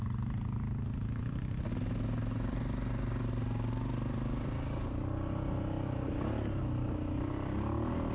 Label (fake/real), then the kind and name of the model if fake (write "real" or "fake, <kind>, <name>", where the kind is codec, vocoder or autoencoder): real